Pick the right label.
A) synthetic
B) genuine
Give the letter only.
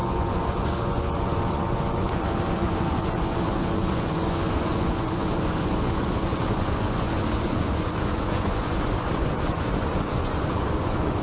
A